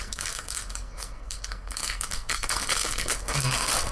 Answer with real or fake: fake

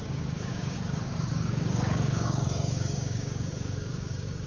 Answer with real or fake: fake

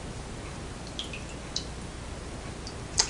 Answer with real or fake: real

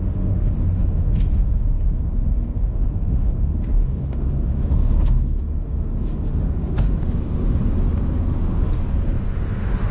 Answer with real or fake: fake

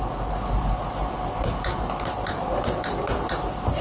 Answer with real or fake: real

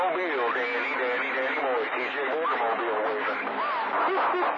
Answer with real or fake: real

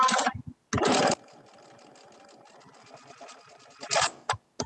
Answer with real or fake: real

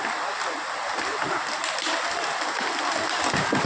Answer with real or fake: real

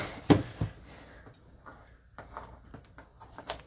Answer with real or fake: real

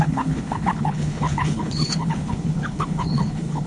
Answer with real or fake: fake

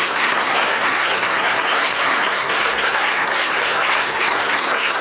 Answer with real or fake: fake